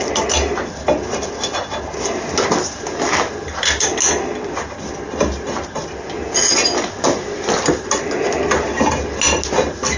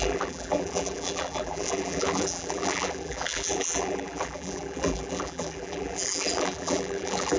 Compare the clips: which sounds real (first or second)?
first